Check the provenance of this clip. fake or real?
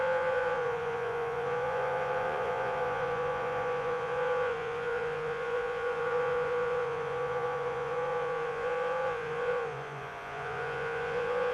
fake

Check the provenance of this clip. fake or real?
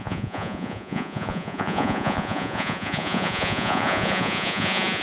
fake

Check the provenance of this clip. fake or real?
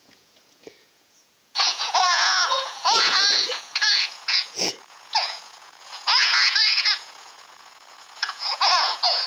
fake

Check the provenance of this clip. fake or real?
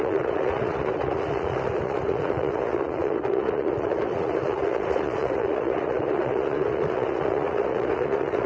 fake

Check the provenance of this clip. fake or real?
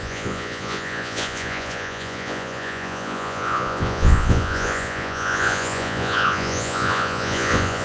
fake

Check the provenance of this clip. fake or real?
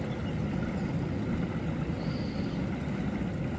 real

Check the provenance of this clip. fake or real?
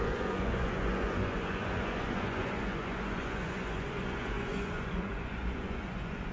fake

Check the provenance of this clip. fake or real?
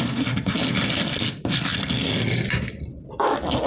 real